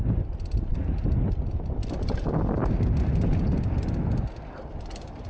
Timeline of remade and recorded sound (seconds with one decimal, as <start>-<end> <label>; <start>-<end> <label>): 0.0-5.3 recorded